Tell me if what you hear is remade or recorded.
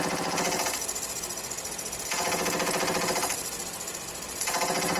recorded